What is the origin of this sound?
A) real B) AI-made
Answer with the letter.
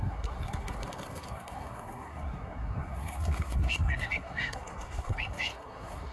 B